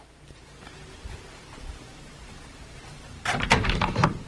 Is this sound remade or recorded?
remade